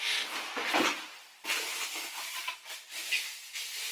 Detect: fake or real fake